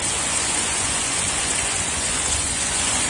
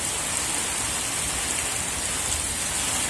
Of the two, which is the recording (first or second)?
second